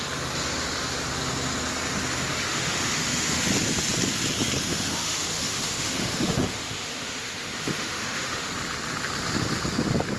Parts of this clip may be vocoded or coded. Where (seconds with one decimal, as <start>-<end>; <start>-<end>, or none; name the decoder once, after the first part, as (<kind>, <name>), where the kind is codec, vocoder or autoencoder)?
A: 2.5-3.4 (autoencoder, DAC-VAE); 4.7-8.5